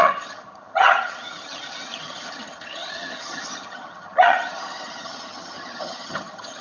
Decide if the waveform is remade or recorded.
remade